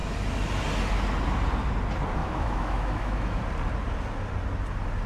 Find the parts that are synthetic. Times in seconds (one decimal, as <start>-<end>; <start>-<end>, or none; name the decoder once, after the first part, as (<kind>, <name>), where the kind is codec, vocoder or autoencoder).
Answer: 2.2-3.4 (autoencoder, DAC-VAE)